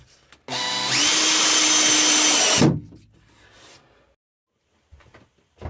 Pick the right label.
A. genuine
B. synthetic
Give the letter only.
A